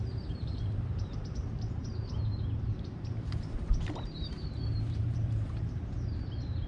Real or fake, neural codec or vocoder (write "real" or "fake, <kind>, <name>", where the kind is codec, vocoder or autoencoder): fake, vocoder, BigVGAN v2